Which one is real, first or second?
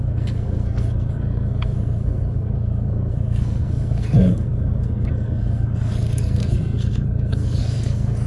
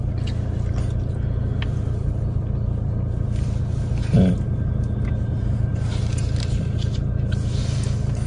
second